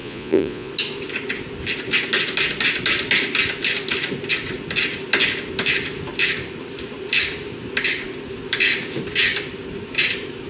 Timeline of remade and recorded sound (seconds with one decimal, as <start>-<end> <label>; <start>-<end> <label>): 0.0-0.7 remade; 0.7-10.5 recorded